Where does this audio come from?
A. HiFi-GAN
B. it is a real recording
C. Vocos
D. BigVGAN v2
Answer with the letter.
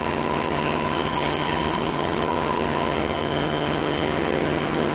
A